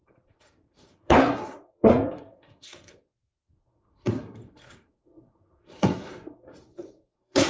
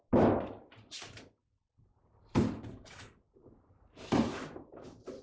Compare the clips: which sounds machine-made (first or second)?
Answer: first